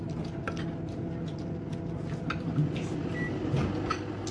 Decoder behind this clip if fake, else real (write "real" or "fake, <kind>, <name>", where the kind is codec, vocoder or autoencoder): real